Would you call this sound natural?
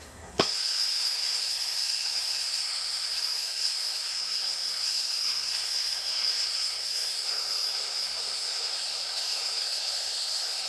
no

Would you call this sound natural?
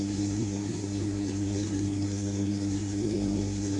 no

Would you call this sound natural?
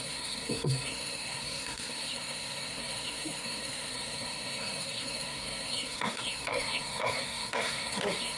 no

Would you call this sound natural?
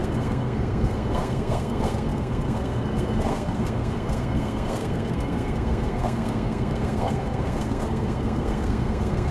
no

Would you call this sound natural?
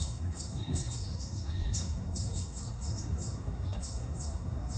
no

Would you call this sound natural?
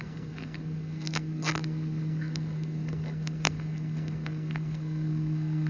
no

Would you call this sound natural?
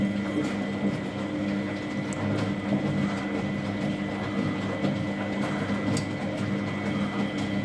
yes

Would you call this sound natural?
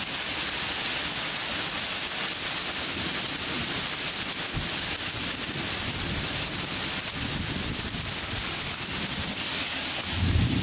yes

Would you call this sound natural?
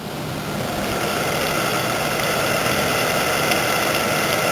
yes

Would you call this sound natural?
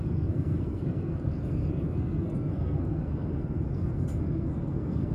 no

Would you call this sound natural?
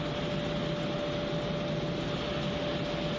yes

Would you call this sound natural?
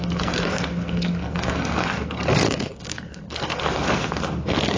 no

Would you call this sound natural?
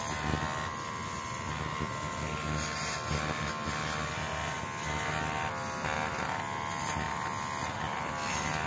yes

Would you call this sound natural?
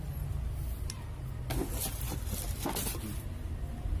yes